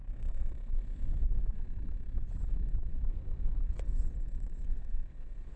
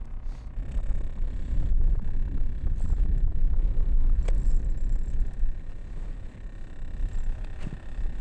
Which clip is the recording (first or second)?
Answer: second